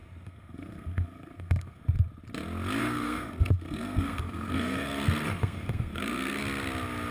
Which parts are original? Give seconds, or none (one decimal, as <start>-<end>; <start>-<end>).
1.8-2.8; 6.4-7.1